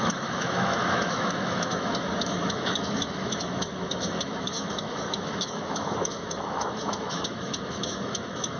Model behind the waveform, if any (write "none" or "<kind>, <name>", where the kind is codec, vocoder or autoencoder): autoencoder, DAC-VAE